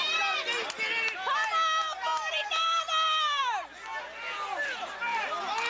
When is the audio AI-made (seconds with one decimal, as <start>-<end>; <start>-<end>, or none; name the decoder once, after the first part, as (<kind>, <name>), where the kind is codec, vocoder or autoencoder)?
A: 2.1-2.8 (vocoder, BigVGAN v2)